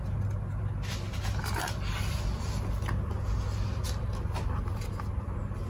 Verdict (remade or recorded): recorded